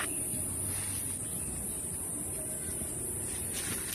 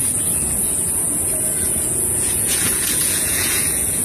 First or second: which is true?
first